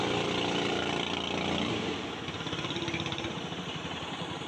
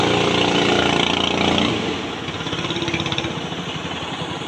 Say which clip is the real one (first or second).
second